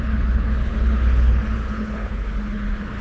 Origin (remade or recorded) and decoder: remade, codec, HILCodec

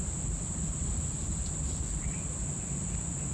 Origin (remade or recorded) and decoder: recorded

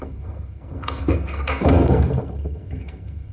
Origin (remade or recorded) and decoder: remade, codec, SNAC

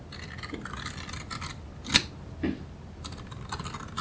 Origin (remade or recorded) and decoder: recorded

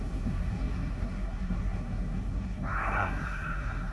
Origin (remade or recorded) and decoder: remade, codec, SNAC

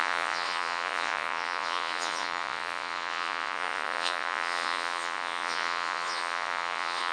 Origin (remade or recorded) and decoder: remade, vocoder, Vocos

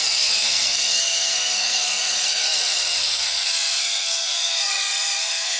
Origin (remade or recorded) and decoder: remade, codec, SNAC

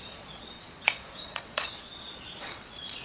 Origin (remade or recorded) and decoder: remade, vocoder, Vocos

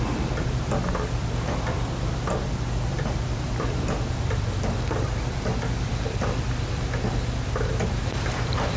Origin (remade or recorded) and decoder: remade, vocoder, BigVGAN v2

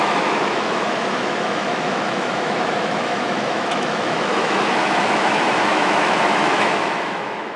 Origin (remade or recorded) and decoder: remade, autoencoder, DAC-VAE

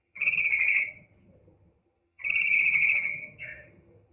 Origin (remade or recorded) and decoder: remade, vocoder, HiFi-GAN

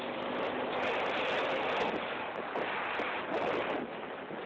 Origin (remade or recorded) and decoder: recorded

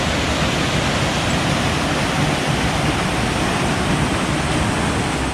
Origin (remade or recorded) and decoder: recorded